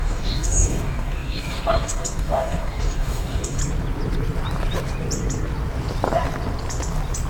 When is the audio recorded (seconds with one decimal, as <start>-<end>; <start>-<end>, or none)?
3.6-7.3